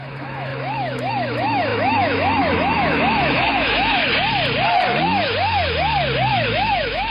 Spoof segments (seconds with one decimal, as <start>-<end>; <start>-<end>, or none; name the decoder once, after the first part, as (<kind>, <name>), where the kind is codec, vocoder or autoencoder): 0.0-4.0 (autoencoder, DAC-VAE); 6.3-7.1